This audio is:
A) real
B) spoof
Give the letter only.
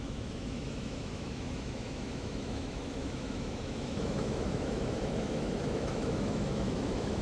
B